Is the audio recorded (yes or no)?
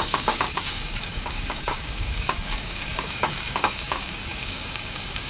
no